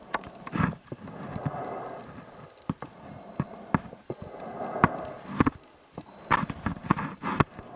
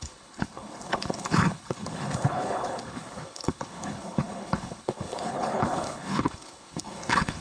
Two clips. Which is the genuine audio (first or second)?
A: first